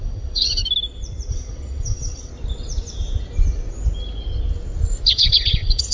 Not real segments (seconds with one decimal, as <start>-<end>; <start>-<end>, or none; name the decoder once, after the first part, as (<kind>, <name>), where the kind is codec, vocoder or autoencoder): 0.0-0.6 (vocoder, WaveNeXt); 1.3-2.3; 5.1-5.9